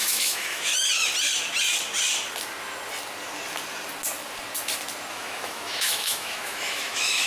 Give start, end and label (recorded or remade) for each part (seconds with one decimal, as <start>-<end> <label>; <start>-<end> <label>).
0.0-0.7 remade; 0.7-5.1 recorded; 5.1-7.3 remade